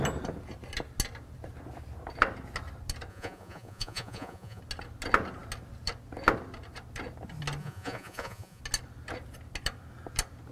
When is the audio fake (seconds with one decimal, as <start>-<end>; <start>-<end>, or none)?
3.1-4.6; 7.6-8.6